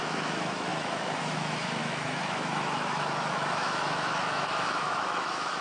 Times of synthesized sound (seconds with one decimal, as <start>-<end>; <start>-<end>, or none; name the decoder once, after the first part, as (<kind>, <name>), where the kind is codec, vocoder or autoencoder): 0.0-5.6 (autoencoder, DAC-VAE)